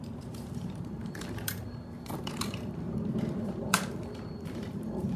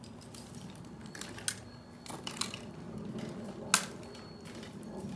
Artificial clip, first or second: first